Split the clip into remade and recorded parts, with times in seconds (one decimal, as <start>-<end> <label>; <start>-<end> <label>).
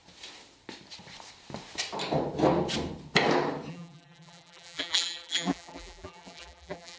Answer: 0.0-3.7 recorded; 3.7-7.0 remade